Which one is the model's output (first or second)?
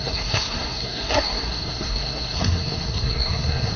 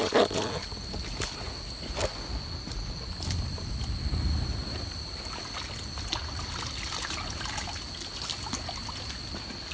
first